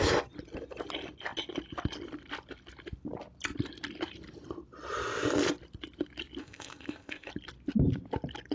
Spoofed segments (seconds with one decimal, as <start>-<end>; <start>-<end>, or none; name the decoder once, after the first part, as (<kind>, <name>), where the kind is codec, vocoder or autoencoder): 6.4-7.3 (codec, ZipCodec)